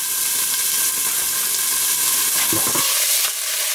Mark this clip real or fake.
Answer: real